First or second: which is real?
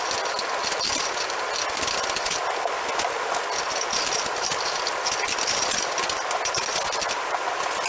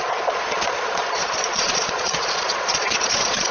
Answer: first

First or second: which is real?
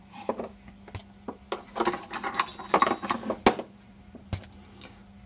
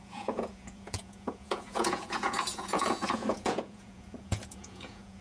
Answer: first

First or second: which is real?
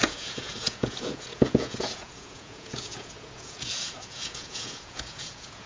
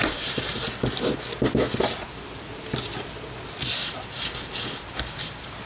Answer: second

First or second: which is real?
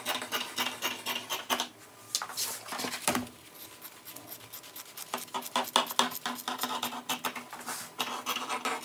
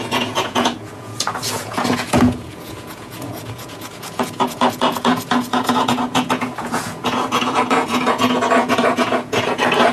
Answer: first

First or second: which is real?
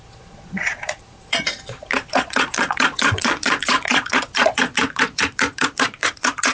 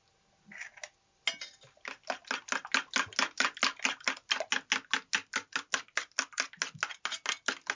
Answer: second